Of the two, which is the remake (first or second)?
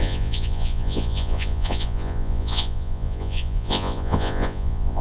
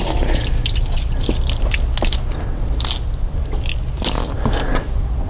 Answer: first